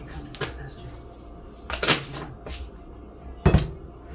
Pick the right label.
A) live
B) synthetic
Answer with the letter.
A